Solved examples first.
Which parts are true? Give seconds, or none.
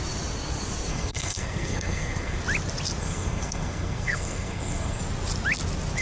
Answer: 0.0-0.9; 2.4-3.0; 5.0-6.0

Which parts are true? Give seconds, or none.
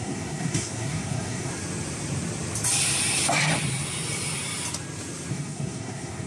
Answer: 1.5-5.3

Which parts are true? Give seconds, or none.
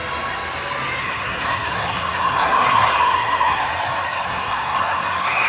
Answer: 0.0-1.0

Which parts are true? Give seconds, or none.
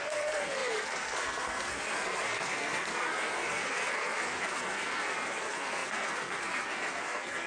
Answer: none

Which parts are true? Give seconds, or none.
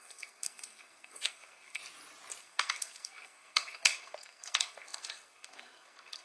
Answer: 1.8-2.4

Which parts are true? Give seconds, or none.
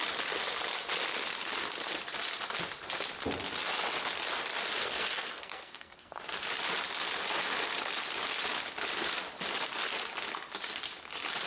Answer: 0.0-4.8; 6.2-11.5